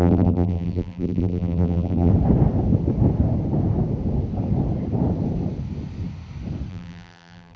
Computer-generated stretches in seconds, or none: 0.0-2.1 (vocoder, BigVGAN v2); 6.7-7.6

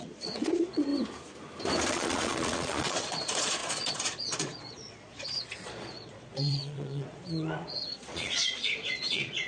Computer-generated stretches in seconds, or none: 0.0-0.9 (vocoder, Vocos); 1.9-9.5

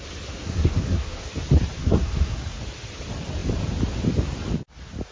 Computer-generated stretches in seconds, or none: 0.4-1.2 (codec, SNAC); 1.8-2.6

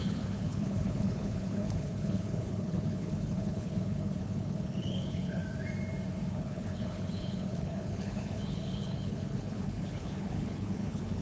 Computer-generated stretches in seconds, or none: 0.0-5.4 (codec, HILCodec); 6.3-11.2

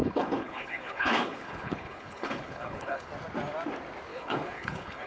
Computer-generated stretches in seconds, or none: 0.0-3.1 (codec, HILCodec); 4.1-5.1

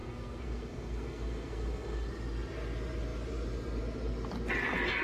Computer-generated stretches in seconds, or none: 0.0-2.1 (codec, SNAC)

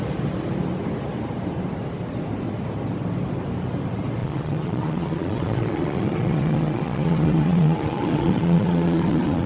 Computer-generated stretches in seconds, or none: 4.2-9.5 (vocoder, Vocos)

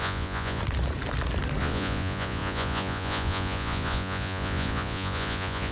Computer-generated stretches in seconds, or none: 0.0-0.6 (vocoder, Vocos); 1.6-5.7